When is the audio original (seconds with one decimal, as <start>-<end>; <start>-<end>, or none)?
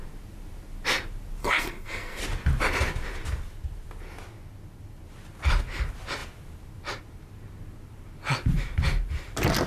0.0-1.4; 2.2-9.7